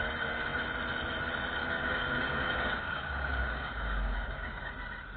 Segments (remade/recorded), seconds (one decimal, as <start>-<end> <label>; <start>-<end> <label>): 0.0-1.6 recorded; 1.6-4.7 remade; 4.7-5.2 recorded